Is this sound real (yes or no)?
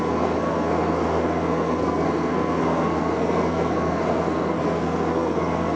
no